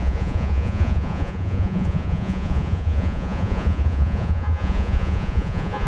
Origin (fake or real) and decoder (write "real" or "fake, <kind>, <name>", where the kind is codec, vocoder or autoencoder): fake, vocoder, Vocos